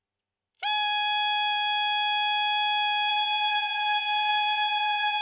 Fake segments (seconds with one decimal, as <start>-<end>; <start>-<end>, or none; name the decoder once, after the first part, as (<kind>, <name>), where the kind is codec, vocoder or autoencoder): 3.1-5.2 (vocoder, BigVGAN v2)